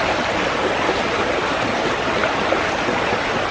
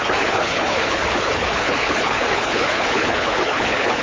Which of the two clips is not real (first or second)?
second